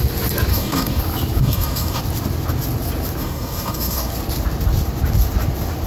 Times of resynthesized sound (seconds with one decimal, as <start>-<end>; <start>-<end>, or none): 0.5-1.0; 1.4-2.0; 3.2-4.1